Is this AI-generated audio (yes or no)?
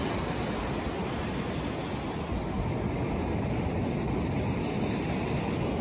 no